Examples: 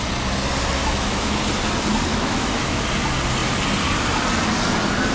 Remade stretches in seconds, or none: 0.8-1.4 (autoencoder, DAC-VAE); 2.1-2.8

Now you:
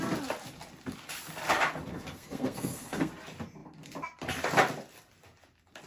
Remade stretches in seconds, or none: 1.9-3.1 (codec, SNAC)

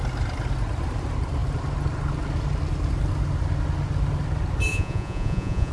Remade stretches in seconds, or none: 4.7-5.7 (vocoder, Vocos)